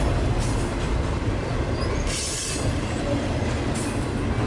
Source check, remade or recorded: recorded